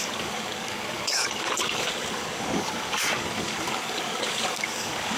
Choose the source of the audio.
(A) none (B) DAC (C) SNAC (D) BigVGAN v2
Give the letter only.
B